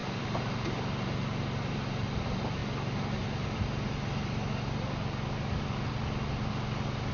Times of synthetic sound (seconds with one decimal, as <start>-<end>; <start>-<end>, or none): none